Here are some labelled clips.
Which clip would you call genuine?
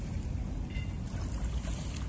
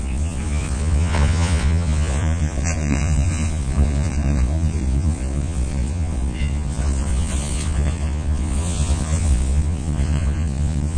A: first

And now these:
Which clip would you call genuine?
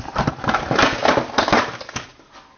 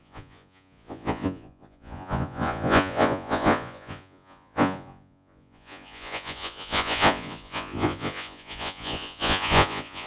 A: first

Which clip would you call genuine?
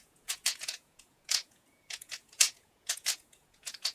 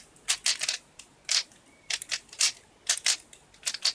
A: second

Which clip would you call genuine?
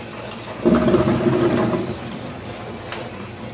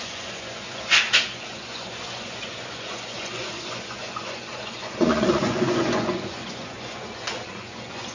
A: first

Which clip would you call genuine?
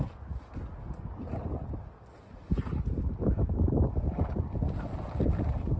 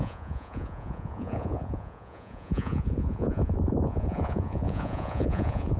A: first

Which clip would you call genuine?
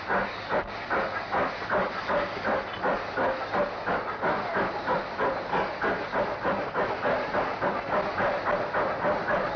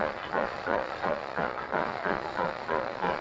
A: first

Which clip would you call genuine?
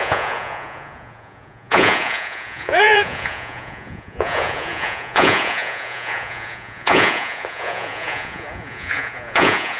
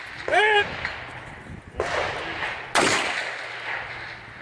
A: second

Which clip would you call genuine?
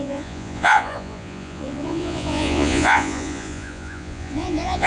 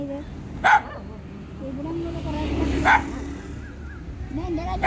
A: second